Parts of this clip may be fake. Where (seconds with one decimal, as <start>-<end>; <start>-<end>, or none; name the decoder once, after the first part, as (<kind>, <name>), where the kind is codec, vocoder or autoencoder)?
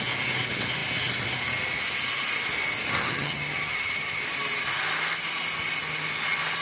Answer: 3.0-4.2 (vocoder, HiFi-GAN)